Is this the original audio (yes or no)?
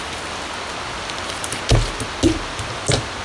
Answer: yes